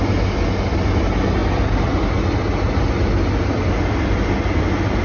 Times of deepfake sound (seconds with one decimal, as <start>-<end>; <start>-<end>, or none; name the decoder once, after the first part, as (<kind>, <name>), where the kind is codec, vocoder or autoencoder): none